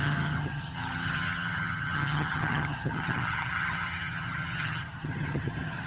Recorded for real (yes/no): no